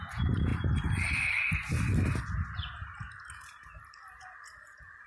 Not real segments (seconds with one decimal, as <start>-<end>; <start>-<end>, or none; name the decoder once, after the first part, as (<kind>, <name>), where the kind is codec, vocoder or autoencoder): none